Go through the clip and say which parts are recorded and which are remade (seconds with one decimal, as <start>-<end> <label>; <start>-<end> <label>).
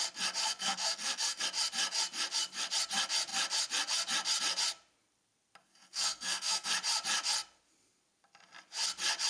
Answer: 0.0-0.4 recorded; 0.4-1.4 remade; 1.4-5.6 recorded; 5.6-6.7 remade; 6.7-9.3 recorded